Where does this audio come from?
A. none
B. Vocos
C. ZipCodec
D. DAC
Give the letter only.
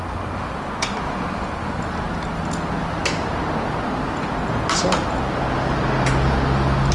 A